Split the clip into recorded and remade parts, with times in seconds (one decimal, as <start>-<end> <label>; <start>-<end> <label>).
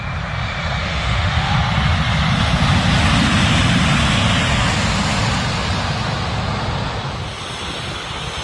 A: 0.0-0.8 recorded; 0.8-1.5 remade; 1.5-8.4 recorded